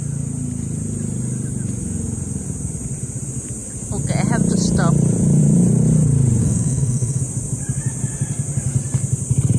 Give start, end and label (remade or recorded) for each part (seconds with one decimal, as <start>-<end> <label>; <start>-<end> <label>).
0.0-6.4 recorded; 6.4-7.2 remade; 7.2-9.6 recorded